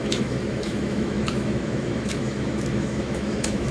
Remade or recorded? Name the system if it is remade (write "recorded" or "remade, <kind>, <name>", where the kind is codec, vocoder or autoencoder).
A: remade, autoencoder, DAC-VAE